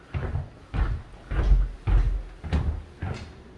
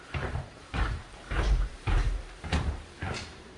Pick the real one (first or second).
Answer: first